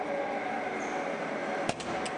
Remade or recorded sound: recorded